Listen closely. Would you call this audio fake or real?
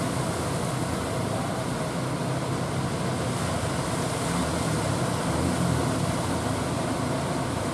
real